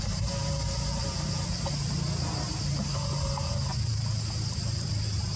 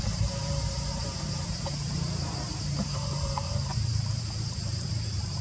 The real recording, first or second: first